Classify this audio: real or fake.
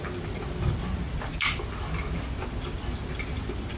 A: real